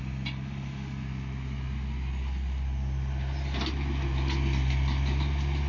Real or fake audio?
real